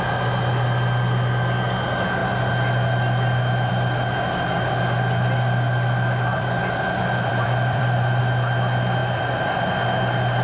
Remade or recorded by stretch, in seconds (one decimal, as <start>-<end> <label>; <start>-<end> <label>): 0.0-6.3 recorded; 6.3-8.2 remade; 8.2-9.0 recorded; 9.0-9.6 remade; 9.6-10.4 recorded